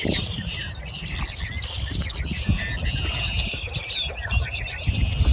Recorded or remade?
recorded